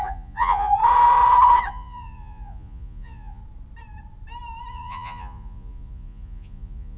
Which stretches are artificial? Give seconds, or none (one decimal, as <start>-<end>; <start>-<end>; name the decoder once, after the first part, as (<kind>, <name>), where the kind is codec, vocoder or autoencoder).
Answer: 0.0-0.8 (vocoder, Vocos); 1.7-3.4; 4.7-7.0